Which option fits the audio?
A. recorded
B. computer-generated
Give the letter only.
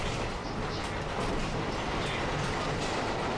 A